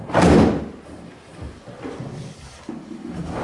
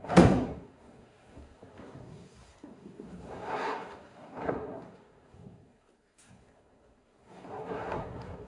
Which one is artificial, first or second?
second